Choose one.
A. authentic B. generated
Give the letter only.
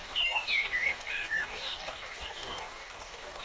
B